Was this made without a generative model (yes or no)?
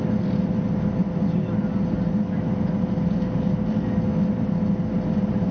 yes